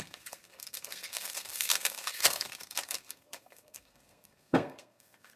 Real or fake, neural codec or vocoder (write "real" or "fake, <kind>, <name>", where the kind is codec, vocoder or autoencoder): fake, codec, SNAC